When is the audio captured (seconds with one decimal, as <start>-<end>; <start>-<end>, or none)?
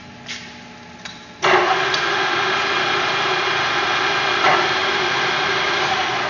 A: 0.0-6.3